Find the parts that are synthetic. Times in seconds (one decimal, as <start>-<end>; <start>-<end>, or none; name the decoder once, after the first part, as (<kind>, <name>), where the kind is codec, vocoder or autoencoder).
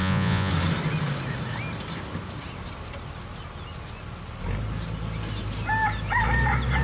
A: 0.0-0.5 (vocoder, Vocos)